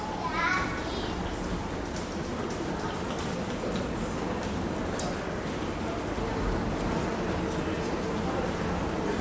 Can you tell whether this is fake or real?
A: real